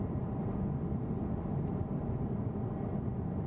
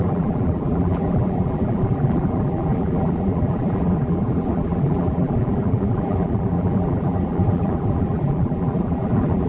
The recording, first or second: first